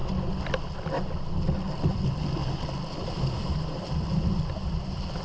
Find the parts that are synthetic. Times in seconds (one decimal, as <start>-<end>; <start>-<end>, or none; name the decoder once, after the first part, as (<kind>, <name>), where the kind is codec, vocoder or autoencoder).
1.9-2.4 (vocoder, BigVGAN v2); 3.0-5.2

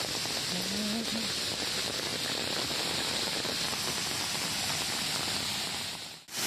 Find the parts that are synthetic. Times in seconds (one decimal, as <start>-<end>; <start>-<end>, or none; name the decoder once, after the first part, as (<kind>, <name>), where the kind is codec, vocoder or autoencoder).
1.1-1.6 (vocoder, BigVGAN v2)

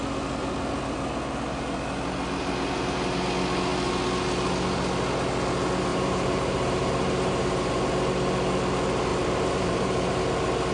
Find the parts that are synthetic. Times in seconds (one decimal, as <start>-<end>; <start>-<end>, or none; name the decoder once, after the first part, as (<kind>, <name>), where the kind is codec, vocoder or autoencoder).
5.9-7.7 (vocoder, BigVGAN v2); 9.1-10.2

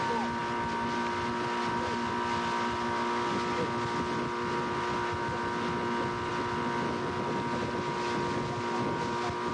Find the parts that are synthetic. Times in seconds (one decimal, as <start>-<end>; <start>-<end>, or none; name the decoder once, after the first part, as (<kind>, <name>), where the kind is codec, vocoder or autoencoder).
none

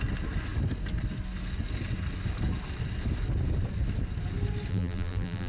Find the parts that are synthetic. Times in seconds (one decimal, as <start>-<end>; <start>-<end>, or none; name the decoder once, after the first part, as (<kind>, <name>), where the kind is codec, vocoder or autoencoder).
4.7-5.5 (vocoder, BigVGAN v2)